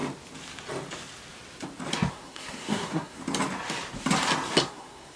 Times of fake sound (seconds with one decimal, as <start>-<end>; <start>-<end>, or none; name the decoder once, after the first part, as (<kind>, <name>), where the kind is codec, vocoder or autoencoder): 2.1-3.2 (codec, SNAC); 4.6-5.2